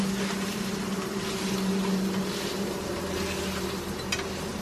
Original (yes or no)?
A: yes